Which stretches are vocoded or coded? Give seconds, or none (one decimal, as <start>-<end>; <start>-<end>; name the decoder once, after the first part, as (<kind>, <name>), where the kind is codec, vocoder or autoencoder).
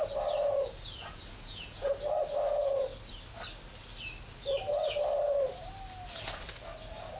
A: 1.0-1.9 (vocoder, Vocos)